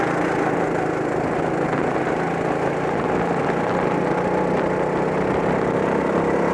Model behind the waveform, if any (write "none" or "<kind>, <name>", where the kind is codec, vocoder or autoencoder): none